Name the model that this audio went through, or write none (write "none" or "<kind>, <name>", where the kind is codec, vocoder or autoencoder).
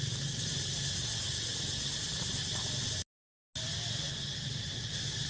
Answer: none